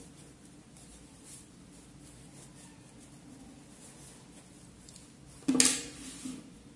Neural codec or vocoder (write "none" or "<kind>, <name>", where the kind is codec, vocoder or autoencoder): none